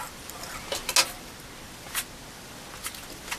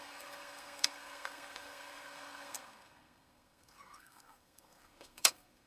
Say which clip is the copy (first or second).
second